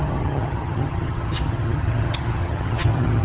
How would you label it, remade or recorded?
remade